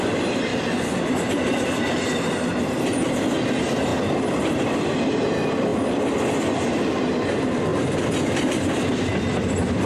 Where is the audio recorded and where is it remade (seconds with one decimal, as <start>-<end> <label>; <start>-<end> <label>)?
0.0-0.5 remade; 0.5-1.3 recorded; 1.3-5.7 remade; 5.7-7.1 recorded; 7.1-9.9 remade